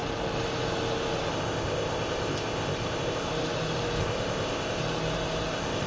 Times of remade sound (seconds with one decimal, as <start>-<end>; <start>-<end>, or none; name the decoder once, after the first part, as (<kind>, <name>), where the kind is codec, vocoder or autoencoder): 1.3-3.3 (codec, ZipCodec); 4.0-4.8; 5.5-5.9